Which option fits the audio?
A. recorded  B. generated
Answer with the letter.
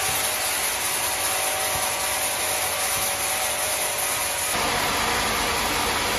A